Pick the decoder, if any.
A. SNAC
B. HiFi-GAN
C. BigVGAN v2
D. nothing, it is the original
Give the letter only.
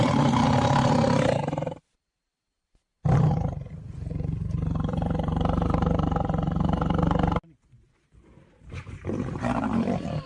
C